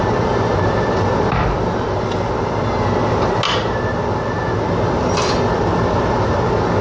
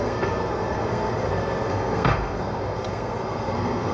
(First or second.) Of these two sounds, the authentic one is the first